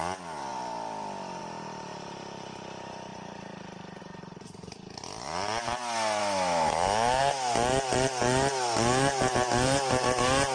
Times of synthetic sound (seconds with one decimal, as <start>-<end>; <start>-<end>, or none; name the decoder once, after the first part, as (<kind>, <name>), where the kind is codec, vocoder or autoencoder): 6.2-7.2 (autoencoder, DAC-VAE)